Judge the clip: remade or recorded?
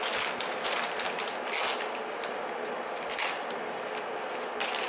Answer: recorded